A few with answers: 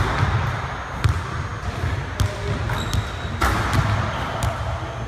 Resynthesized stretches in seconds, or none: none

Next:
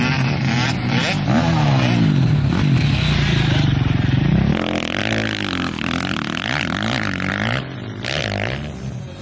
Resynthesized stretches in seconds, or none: none

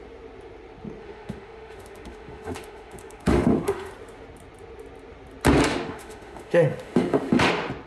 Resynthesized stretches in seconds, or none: 1.0-3.9 (autoencoder, DAC-VAE); 5.6-7.5

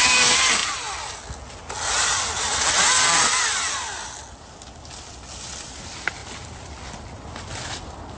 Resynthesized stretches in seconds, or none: none

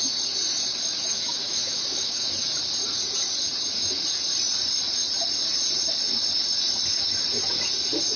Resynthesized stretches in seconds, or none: 1.0-2.3 (autoencoder, DAC-VAE)